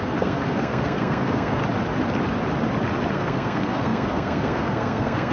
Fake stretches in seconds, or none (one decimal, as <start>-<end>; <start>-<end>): 0.0-1.6; 3.1-5.3